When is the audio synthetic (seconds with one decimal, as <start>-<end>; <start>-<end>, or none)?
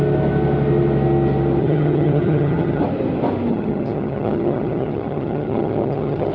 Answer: 1.6-2.8; 3.5-6.3